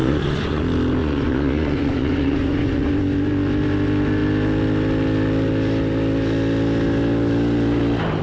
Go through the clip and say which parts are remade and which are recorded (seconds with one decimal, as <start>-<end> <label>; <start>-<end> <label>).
0.0-0.6 remade; 0.6-1.0 recorded; 1.0-2.9 remade; 2.9-8.2 recorded